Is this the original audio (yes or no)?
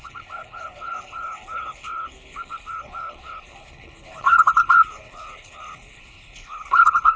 no